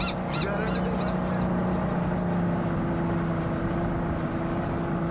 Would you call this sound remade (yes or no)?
no